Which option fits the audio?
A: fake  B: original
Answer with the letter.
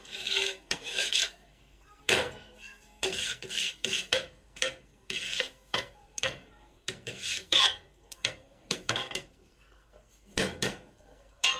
A